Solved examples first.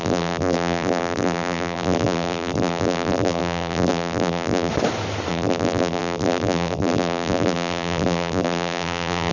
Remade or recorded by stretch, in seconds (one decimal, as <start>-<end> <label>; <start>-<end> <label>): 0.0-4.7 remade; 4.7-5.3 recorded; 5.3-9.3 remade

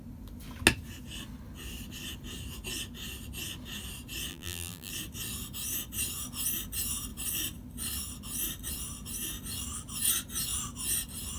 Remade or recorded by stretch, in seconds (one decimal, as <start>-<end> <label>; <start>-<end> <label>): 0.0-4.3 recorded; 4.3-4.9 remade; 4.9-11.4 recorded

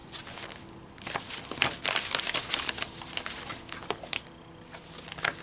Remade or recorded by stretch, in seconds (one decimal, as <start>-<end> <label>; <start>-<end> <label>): 0.0-5.4 recorded